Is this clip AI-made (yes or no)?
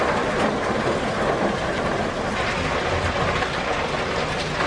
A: no